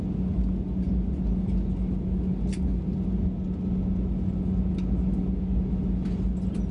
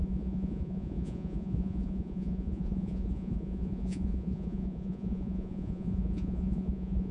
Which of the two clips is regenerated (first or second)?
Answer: second